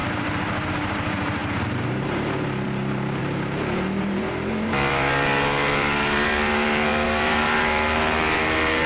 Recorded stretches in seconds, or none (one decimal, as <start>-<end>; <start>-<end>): none